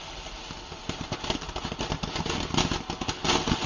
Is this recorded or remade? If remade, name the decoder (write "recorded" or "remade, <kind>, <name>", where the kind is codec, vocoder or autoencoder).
recorded